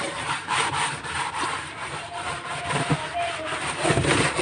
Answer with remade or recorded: remade